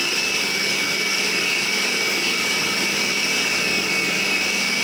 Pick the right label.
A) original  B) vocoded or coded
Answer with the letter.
B